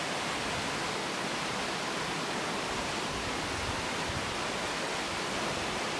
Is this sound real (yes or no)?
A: yes